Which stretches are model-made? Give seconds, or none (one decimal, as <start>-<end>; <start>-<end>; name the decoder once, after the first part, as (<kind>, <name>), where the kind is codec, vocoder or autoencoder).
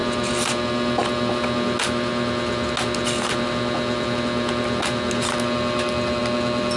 none